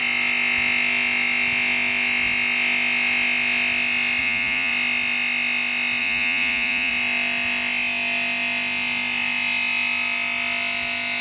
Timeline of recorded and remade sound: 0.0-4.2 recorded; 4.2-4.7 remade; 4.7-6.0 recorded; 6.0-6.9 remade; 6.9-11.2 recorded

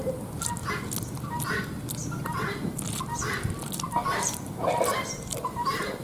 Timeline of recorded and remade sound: 0.0-0.6 remade; 0.6-4.2 recorded; 4.2-6.0 remade